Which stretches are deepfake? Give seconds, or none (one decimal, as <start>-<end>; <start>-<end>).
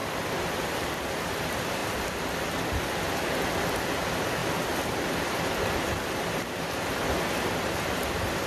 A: 0.0-1.1; 1.8-2.3